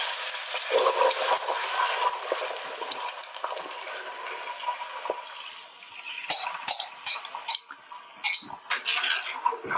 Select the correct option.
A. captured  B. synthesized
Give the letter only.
A